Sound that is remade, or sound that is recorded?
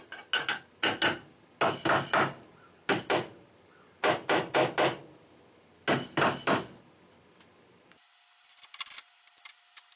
recorded